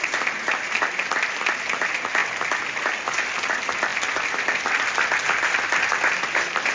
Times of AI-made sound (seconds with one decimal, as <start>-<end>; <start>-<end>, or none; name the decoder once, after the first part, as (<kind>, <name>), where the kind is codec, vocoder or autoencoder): none